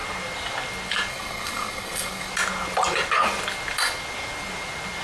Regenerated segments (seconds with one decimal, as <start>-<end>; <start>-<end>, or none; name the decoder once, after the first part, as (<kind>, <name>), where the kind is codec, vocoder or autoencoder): 1.1-2.3 (codec, SNAC)